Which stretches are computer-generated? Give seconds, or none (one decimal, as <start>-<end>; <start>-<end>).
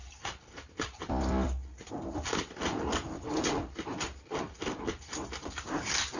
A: none